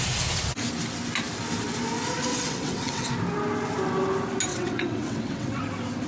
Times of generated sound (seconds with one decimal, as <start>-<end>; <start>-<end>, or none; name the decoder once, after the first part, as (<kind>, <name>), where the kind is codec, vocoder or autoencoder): 2.3-3.1 (vocoder, WaveNeXt); 4.5-5.6